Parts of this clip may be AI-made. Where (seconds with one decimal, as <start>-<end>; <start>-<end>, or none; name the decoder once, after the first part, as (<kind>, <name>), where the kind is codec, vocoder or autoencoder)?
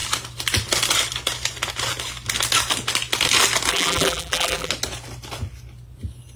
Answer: 3.7-4.7 (vocoder, BigVGAN v2)